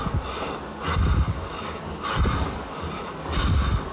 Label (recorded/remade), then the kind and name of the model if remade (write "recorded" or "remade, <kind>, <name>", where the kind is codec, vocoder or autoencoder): recorded